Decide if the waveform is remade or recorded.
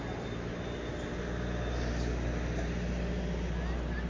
recorded